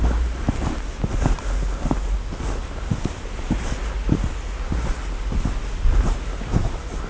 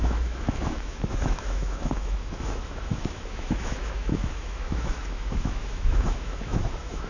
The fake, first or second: second